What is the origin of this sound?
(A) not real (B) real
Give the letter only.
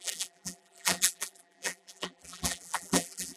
A